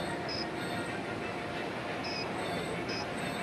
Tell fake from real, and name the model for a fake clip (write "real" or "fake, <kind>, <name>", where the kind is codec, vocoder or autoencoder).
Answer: real